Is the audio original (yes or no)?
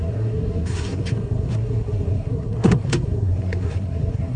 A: no